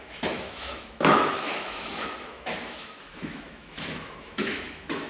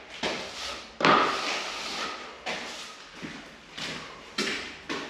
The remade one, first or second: first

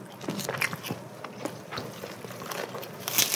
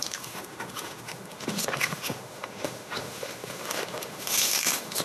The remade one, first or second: second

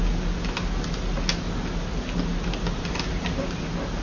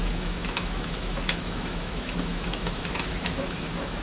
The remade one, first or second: second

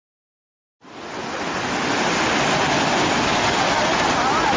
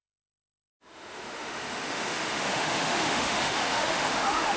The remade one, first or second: second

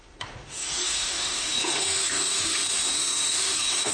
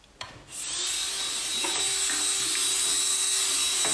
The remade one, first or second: first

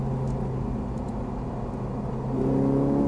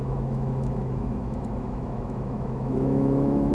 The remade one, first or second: second